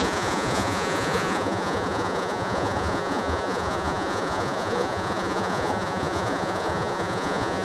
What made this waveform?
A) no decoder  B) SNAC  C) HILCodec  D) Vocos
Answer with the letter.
D